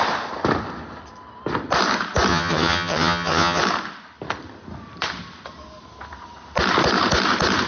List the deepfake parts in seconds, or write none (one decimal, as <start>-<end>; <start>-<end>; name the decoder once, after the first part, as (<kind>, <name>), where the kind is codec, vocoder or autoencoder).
2.3-3.6 (vocoder, HiFi-GAN)

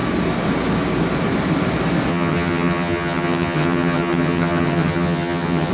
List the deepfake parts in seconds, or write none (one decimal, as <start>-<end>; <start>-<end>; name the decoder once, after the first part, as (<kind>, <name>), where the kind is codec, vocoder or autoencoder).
2.1-5.7 (vocoder, HiFi-GAN)